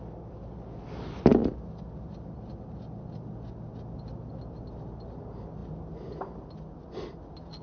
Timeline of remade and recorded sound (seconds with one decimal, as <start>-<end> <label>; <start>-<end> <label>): 0.0-7.6 recorded